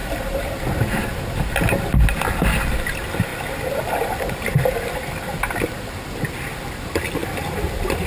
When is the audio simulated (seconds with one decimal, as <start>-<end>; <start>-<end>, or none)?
0.0-0.5; 7.2-8.1